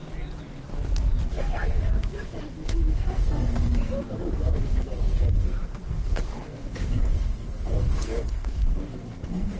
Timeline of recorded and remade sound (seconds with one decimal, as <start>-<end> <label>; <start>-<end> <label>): 0.0-1.3 recorded; 1.3-9.6 remade